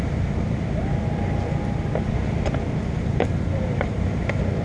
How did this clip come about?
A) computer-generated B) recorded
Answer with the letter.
A